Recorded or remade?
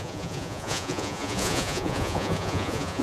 remade